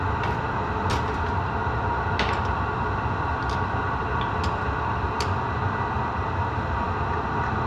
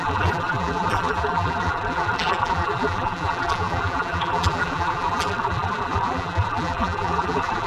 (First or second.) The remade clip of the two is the second